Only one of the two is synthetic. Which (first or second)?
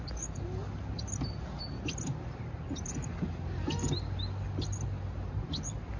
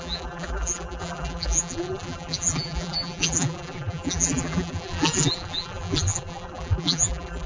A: second